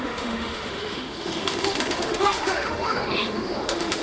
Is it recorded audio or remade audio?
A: remade